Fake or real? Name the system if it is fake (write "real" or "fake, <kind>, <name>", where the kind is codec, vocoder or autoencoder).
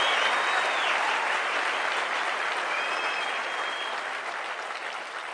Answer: real